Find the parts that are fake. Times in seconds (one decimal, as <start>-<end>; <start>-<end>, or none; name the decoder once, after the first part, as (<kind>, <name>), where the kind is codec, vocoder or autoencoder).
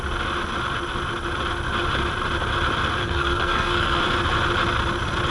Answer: 3.0-4.0 (codec, SNAC)